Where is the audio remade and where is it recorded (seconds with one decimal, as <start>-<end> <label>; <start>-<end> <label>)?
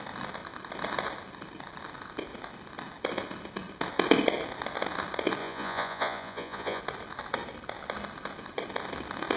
0.0-5.4 recorded; 5.4-6.8 remade; 6.8-9.4 recorded